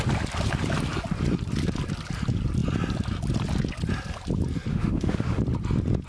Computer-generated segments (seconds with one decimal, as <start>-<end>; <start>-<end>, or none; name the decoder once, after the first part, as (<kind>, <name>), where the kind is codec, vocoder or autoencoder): 4.7-5.4 (autoencoder, DAC-VAE)